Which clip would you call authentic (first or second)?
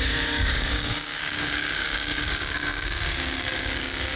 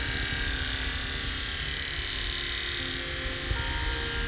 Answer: second